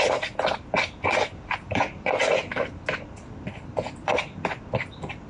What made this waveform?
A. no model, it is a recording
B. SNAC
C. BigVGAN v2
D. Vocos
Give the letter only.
C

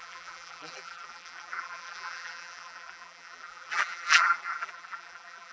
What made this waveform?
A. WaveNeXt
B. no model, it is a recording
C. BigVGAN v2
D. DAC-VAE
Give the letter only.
C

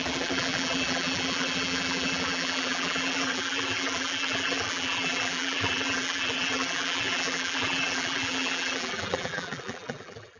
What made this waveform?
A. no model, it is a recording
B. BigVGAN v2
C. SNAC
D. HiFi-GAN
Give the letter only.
B